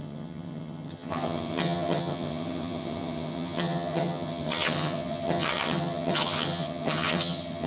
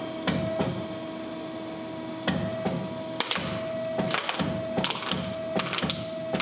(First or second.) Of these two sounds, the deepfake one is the first